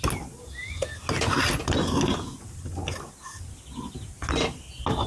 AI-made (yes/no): no